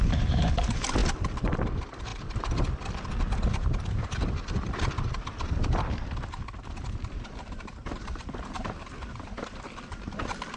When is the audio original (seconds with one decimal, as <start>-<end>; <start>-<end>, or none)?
0.0-2.1; 5.8-7.8; 8.6-10.6